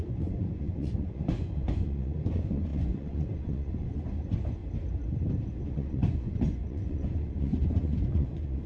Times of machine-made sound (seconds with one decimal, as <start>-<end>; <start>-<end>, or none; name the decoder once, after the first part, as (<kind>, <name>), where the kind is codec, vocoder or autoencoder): 0.0-4.6 (vocoder, Vocos); 5.6-8.7